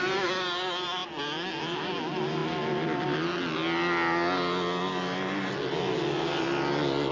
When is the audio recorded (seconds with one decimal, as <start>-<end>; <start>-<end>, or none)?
0.0-7.1